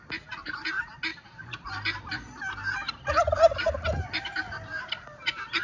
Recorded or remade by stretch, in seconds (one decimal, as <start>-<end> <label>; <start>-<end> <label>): 0.0-5.6 recorded